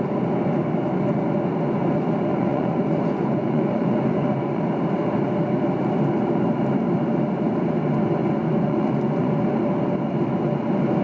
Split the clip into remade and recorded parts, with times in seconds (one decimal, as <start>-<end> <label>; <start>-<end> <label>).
0.0-2.3 recorded; 2.3-4.6 remade; 4.6-8.2 recorded; 8.2-9.4 remade; 9.4-11.0 recorded

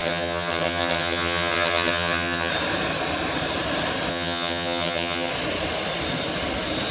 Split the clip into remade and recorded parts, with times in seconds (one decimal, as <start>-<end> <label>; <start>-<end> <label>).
0.0-2.5 remade; 2.5-4.1 recorded; 4.1-5.3 remade; 5.3-6.9 recorded

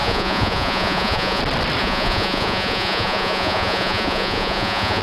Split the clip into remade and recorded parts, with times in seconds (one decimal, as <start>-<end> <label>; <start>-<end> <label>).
0.0-1.4 remade; 1.4-1.8 recorded; 1.8-5.0 remade

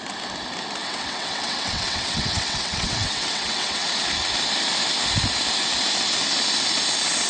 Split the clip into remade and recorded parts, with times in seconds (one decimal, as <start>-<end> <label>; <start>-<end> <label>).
0.0-0.8 recorded; 0.8-3.9 remade; 3.9-7.3 recorded

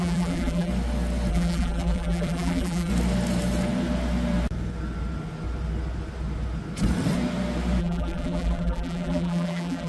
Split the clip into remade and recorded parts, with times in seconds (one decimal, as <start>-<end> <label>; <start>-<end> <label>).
0.0-0.7 remade; 0.7-1.3 recorded; 1.3-2.9 remade; 2.9-7.8 recorded; 7.8-9.9 remade